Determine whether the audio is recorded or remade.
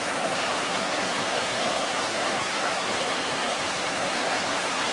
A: remade